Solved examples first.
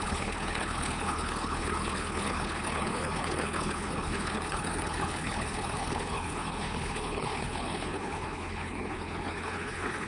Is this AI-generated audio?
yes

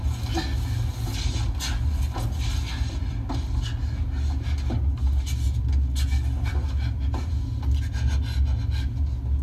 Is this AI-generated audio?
no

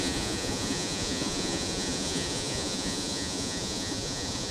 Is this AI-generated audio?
yes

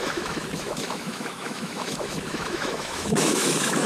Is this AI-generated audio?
yes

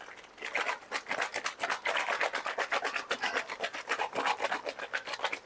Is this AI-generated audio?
no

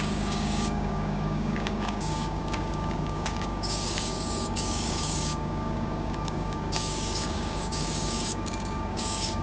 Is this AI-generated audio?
yes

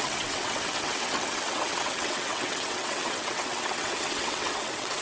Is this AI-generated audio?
yes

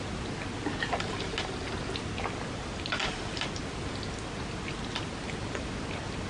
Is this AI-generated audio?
no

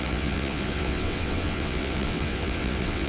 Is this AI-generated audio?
yes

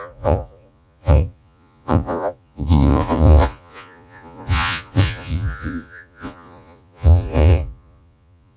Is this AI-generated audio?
yes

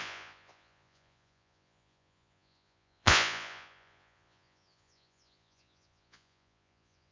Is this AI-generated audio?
yes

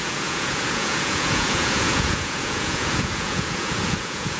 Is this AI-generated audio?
yes